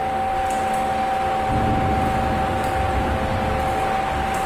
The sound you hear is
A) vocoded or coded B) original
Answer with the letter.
B